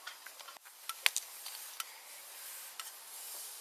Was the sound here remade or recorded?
recorded